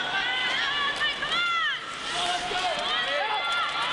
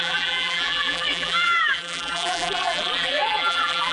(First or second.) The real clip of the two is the first